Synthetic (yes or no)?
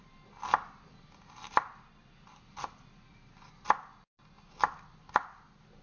no